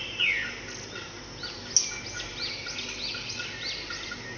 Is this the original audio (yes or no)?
yes